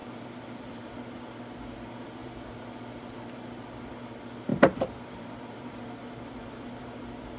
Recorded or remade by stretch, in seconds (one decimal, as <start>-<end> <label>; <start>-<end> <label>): 0.0-1.0 remade; 1.0-2.2 recorded; 2.2-3.6 remade; 3.6-4.5 recorded; 4.5-7.0 remade; 7.0-7.4 recorded